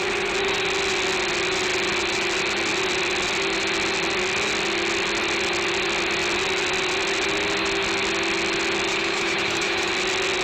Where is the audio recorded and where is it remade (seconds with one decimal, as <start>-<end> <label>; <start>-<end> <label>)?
0.0-8.9 recorded; 8.9-9.9 remade; 9.9-10.4 recorded